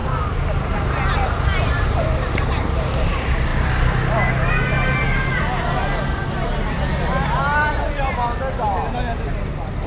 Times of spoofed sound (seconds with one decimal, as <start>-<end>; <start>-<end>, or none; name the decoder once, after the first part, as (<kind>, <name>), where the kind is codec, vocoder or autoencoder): none